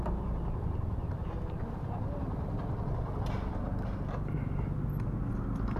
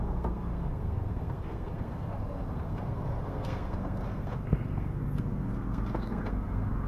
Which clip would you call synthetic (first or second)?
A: second